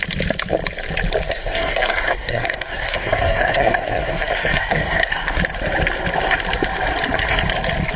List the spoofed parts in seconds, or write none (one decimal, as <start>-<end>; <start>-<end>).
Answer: 1.3-5.4